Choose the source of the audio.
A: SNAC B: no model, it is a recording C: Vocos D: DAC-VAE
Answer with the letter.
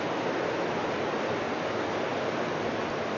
B